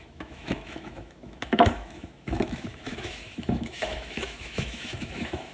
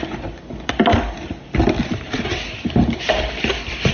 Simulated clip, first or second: first